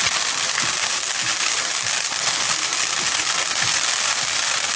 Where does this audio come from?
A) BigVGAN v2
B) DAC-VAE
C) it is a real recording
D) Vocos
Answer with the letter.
C